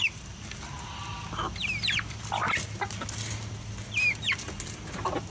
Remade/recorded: recorded